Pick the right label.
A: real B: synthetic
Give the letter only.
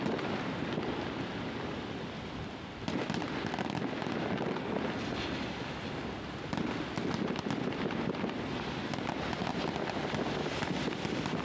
A